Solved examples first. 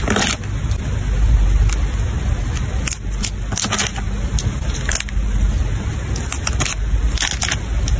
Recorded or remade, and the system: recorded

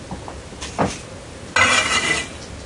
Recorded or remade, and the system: recorded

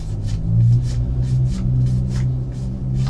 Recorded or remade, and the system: recorded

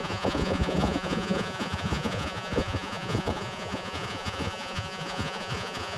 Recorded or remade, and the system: remade, vocoder, Vocos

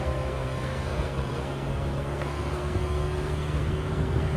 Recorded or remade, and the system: remade, codec, SNAC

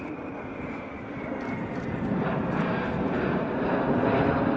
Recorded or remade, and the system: recorded